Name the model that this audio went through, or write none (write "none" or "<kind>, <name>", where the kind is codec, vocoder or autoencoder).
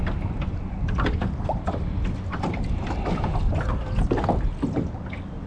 none